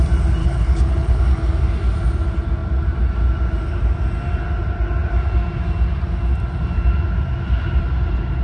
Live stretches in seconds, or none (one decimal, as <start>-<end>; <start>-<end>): 0.0-0.4; 1.2-8.4